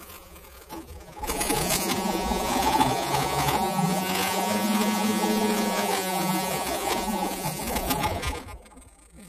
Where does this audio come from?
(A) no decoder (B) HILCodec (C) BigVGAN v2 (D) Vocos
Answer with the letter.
D